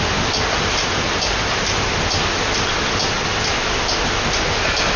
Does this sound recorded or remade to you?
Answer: recorded